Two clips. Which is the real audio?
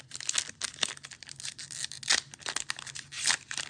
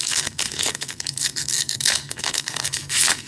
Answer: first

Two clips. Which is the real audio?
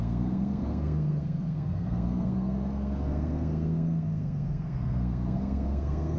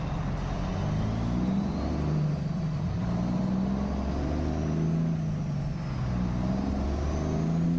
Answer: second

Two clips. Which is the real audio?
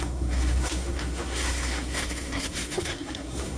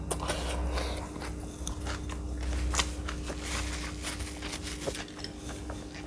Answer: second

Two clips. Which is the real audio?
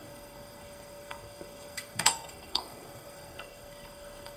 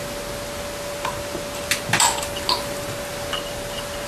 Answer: second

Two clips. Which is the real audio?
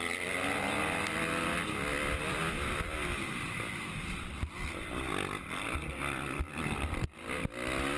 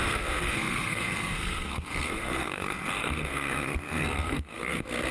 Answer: first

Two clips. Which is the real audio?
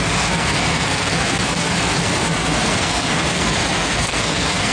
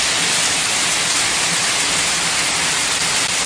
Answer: second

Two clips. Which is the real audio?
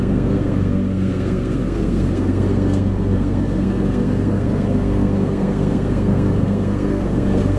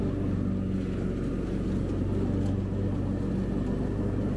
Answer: second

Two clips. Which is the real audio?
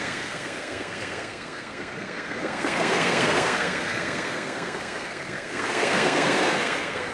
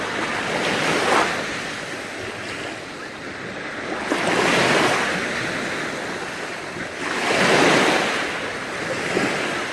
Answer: second